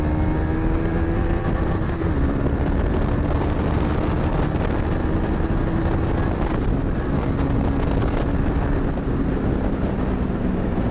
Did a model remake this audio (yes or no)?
no